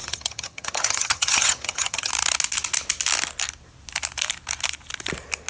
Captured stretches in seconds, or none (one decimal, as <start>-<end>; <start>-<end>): 2.1-5.5